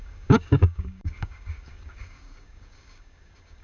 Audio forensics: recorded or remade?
remade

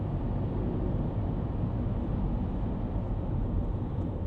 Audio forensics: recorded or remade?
recorded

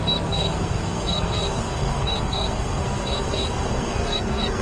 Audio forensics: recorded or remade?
remade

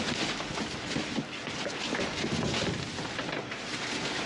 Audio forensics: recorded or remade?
recorded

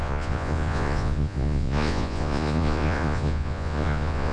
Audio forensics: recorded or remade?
remade